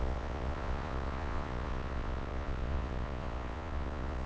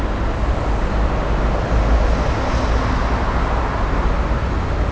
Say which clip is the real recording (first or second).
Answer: second